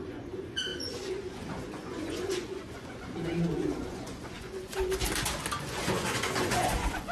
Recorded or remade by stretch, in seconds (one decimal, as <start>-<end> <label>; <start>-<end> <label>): 0.0-5.0 remade; 5.0-5.6 recorded; 5.6-7.1 remade